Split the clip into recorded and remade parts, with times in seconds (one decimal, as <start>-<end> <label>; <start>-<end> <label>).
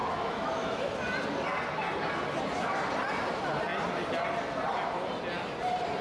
0.0-0.9 remade; 0.9-6.0 recorded